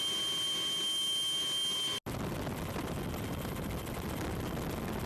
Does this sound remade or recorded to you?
recorded